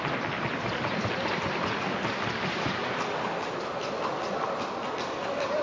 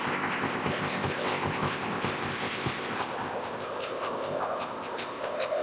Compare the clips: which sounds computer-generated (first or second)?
second